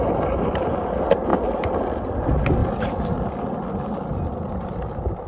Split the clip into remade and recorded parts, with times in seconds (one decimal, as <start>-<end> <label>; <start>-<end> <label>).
0.0-5.3 recorded